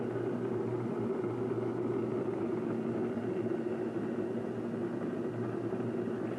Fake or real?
real